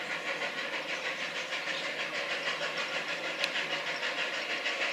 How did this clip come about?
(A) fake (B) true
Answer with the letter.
B